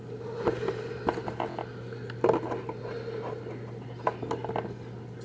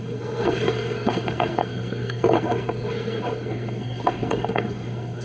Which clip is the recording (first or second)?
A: first